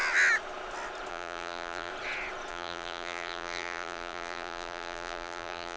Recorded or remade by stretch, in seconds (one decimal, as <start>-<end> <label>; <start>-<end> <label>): 0.0-1.1 recorded; 1.1-1.9 remade; 1.9-2.5 recorded; 2.5-5.8 remade